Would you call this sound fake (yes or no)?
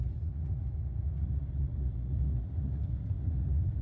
yes